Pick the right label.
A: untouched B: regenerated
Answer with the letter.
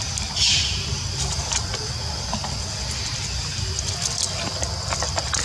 A